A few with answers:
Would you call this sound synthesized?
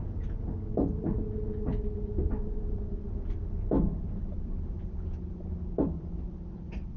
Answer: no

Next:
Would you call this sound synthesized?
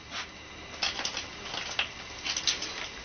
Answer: no